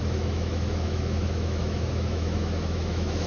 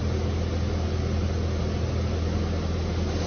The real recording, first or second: second